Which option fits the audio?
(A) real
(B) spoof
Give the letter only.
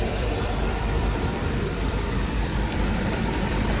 B